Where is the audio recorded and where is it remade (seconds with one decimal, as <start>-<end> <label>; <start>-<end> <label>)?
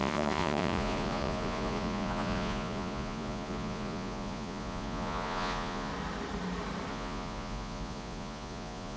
0.0-5.9 remade; 5.9-6.9 recorded; 6.9-9.0 remade